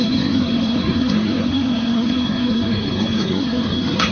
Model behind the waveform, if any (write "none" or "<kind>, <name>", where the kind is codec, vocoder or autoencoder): codec, SNAC